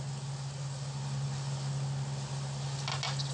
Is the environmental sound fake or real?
real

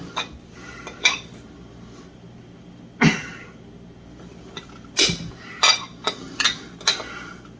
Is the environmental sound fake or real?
real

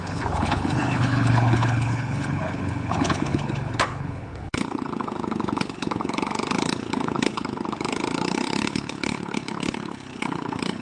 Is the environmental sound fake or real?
fake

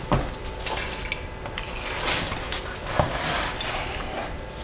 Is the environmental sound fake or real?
real